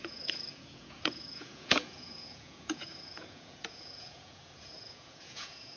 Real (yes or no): no